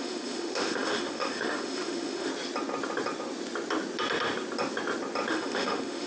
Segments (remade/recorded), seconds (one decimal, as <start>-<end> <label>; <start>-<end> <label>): 0.0-2.3 remade; 2.3-5.3 recorded; 5.3-6.1 remade